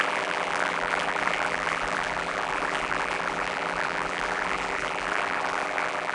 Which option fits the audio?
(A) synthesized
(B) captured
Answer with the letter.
A